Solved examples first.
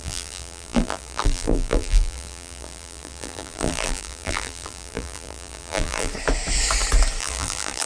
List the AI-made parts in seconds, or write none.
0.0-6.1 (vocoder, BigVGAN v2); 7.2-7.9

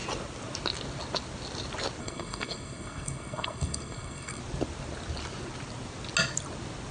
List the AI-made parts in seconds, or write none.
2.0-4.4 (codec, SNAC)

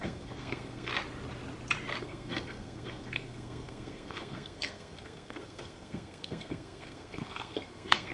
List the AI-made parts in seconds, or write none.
0.0-0.9 (codec, SNAC); 2.0-8.1